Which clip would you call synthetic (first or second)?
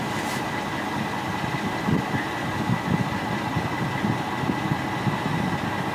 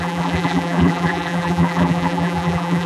second